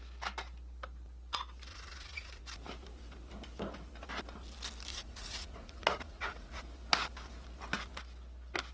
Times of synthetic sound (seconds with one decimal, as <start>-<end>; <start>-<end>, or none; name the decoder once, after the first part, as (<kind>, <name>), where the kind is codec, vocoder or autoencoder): 1.7-2.4 (vocoder, Vocos); 4.9-6.6